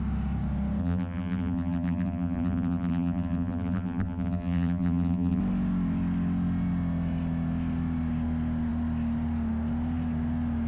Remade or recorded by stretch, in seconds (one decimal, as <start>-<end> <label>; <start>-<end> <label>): 0.0-0.8 recorded; 0.8-5.4 remade; 5.4-10.7 recorded